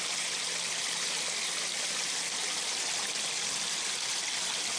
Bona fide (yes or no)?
yes